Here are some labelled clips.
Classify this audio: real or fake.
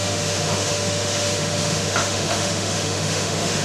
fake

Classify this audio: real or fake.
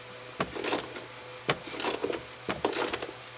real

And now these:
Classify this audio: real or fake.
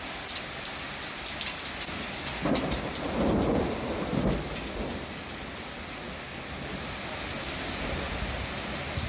real